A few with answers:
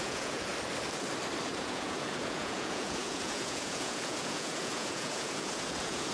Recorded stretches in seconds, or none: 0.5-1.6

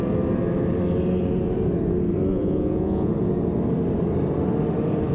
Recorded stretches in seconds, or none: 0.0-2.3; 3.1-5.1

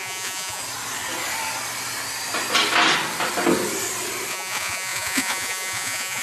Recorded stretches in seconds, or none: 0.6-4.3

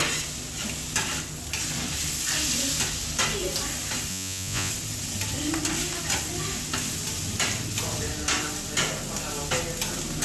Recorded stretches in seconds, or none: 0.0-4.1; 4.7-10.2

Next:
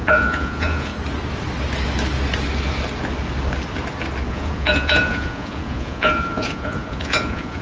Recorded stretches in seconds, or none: 0.9-4.3